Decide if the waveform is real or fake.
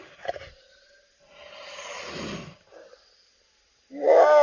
real